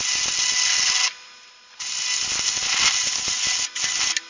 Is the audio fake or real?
real